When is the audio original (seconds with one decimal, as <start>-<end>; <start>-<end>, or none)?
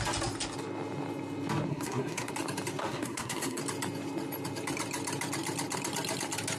0.0-1.7; 2.3-2.8; 3.6-6.6